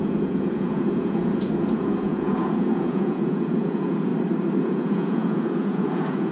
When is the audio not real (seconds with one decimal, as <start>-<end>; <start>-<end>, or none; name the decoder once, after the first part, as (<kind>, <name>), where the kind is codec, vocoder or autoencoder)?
0.0-4.1 (vocoder, Vocos); 4.6-6.3